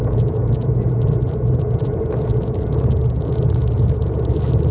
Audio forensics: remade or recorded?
remade